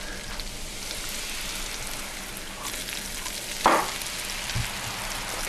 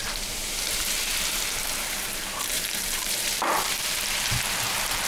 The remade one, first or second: second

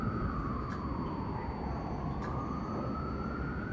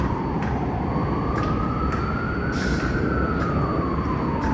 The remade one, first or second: second